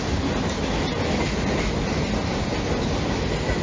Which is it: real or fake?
real